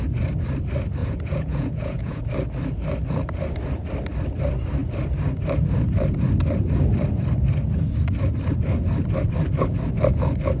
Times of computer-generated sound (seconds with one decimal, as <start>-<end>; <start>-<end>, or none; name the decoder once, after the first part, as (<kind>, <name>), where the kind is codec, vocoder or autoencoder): 1.0-2.2 (vocoder, Vocos)